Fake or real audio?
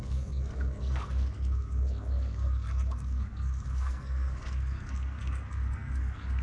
fake